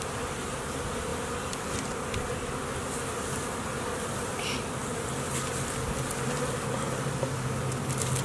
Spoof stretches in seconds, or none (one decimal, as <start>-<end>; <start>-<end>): none